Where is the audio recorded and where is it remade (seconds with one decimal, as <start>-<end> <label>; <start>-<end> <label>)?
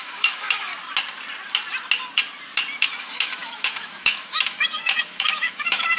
0.0-0.7 remade; 0.7-3.0 recorded; 3.0-6.0 remade